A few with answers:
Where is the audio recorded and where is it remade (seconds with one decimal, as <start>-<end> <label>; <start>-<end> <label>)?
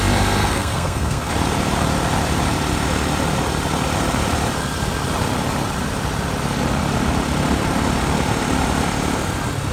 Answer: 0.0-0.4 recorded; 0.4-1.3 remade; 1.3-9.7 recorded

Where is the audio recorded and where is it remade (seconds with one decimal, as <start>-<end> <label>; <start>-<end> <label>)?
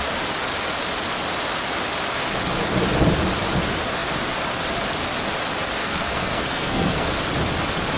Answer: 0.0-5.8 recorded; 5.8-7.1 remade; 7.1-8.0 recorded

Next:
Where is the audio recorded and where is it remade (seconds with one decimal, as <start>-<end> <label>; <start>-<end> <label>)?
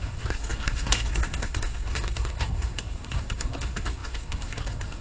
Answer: 0.0-5.0 remade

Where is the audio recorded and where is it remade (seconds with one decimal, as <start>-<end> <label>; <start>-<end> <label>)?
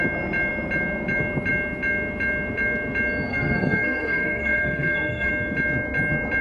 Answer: 0.0-3.3 recorded; 3.3-5.3 remade; 5.3-6.4 recorded